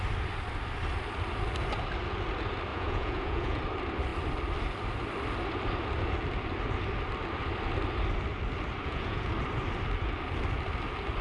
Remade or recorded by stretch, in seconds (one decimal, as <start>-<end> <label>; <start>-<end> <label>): 0.0-2.7 recorded; 2.7-3.6 remade; 3.6-8.8 recorded; 8.8-9.3 remade; 9.3-11.2 recorded